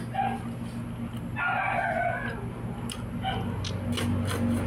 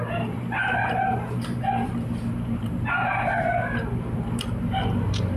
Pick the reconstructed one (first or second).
second